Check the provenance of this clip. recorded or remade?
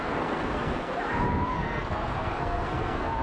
remade